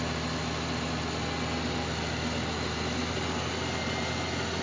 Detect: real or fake real